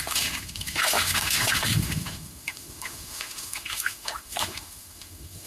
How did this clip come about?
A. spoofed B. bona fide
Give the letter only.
A